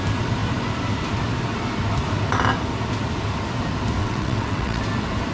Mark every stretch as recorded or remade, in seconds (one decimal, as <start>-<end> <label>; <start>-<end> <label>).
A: 0.0-4.0 recorded; 4.0-4.8 remade; 4.8-5.3 recorded